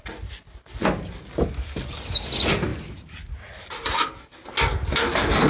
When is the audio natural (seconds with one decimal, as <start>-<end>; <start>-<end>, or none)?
0.0-5.5